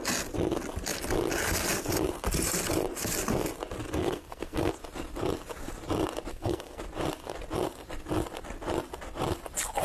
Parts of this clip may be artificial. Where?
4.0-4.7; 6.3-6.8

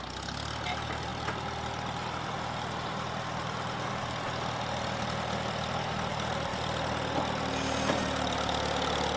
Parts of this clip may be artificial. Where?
none

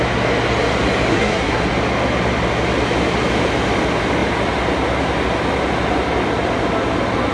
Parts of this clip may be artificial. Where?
1.1-1.6

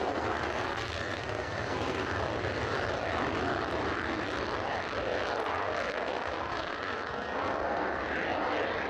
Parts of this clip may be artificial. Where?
0.0-2.2; 5.4-8.0

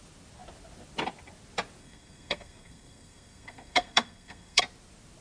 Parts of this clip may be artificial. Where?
1.8-4.6

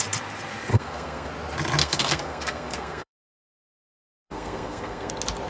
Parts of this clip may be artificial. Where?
0.7-1.3; 1.8-5.1

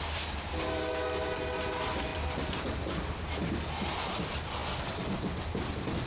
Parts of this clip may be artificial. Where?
none